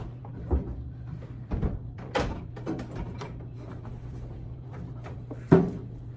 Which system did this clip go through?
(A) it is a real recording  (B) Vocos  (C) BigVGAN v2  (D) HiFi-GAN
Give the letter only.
C